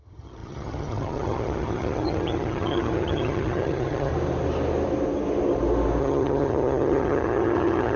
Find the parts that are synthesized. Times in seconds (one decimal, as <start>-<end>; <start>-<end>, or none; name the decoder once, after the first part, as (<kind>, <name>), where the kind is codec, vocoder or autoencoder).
0.0-4.1 (vocoder, HiFi-GAN); 6.0-8.0